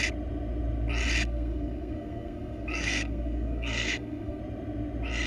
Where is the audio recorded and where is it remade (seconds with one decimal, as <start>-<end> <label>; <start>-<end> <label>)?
0.0-1.2 recorded; 1.2-4.4 remade; 4.4-5.3 recorded